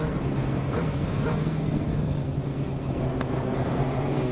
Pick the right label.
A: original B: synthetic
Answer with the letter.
B